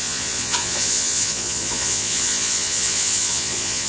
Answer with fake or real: fake